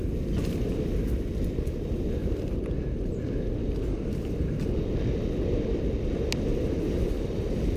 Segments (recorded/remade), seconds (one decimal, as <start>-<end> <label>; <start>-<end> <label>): 0.0-2.2 recorded; 2.2-4.8 remade; 4.8-6.5 recorded; 6.5-7.8 remade